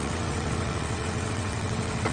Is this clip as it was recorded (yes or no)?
no